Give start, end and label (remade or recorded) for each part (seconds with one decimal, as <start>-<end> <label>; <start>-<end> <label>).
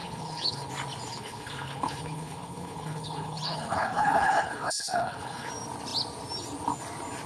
0.0-0.7 remade; 0.7-1.1 recorded; 1.1-5.5 remade; 5.5-7.3 recorded